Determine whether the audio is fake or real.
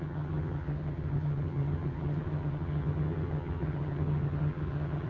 fake